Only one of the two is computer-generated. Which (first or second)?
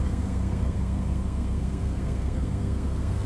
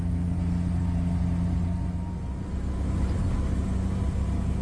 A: first